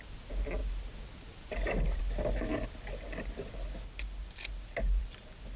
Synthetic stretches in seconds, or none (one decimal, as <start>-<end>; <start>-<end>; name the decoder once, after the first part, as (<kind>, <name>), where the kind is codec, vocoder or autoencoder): none